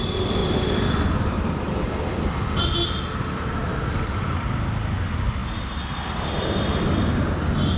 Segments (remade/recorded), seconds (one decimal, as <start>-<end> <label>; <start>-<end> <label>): 0.0-7.8 recorded